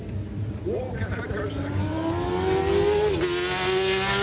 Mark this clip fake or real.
real